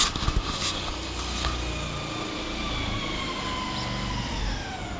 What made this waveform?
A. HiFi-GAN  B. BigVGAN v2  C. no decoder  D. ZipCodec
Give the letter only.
C